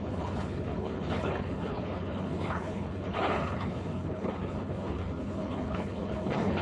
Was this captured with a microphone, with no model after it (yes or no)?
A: no